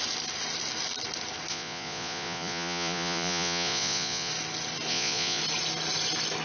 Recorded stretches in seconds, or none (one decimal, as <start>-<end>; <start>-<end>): 0.0-1.5; 4.3-4.9; 5.4-6.4